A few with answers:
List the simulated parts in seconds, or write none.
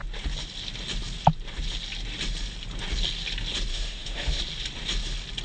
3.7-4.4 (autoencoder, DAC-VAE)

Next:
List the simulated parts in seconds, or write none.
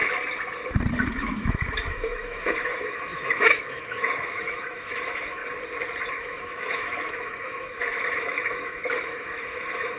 1.1-5.4 (autoencoder, DAC-VAE); 6.1-10.0